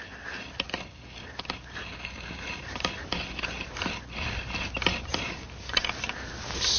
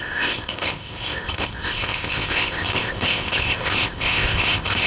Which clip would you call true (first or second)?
first